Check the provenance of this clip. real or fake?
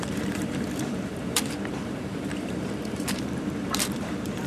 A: fake